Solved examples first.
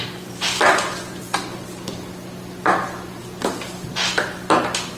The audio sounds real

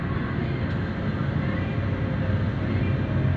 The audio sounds real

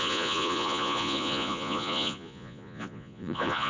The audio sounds fake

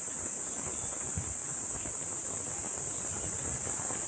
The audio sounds real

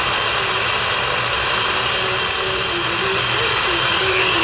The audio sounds fake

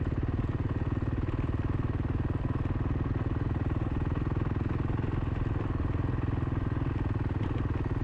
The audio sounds real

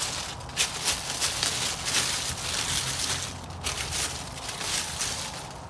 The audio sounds real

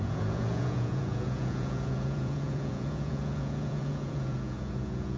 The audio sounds fake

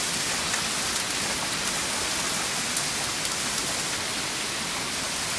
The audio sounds real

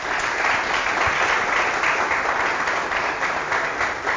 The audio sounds real